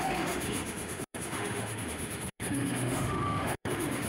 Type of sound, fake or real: fake